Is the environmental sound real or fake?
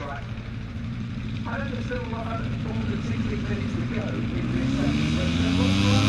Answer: real